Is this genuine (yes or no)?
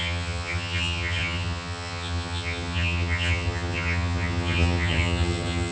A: no